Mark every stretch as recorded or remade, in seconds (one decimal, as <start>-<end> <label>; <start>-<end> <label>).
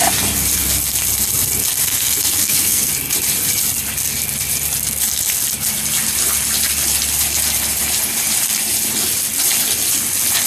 0.0-1.8 recorded; 1.8-2.9 remade; 2.9-10.5 recorded